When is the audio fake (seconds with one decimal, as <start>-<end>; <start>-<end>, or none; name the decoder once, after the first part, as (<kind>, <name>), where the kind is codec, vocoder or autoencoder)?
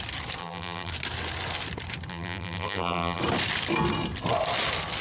0.4-0.9 (vocoder, BigVGAN v2); 2.1-3.2